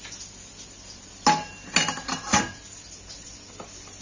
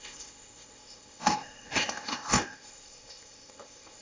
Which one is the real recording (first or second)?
first